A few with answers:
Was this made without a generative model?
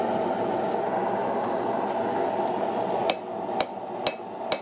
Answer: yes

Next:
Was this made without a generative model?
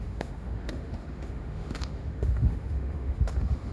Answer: no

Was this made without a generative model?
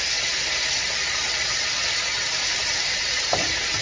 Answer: yes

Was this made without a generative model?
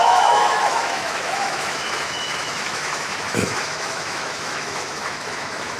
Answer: no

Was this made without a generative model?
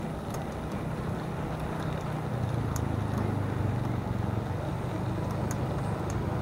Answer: yes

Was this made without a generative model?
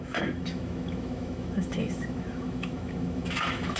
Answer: no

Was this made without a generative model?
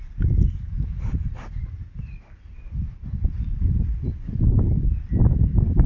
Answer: yes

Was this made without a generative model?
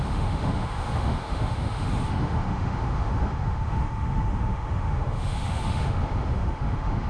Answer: no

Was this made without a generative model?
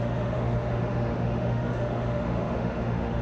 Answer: no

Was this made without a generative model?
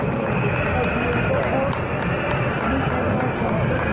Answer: yes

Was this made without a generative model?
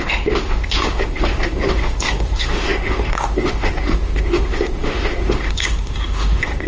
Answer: no